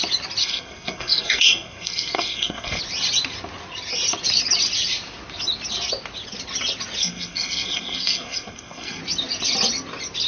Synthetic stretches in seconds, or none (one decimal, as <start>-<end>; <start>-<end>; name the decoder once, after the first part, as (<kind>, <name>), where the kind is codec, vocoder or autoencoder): 0.4-2.8 (codec, SNAC); 7.0-9.0